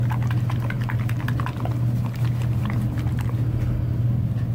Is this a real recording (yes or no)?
yes